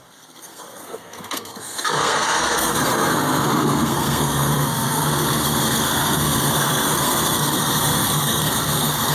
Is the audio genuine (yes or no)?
no